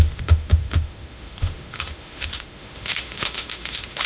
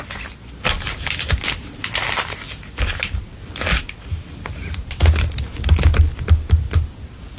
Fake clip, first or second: first